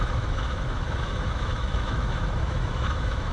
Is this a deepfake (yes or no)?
yes